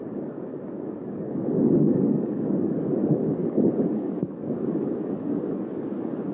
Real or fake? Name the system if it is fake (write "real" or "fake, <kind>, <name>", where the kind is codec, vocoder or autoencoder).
fake, codec, DAC